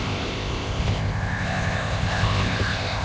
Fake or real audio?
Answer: fake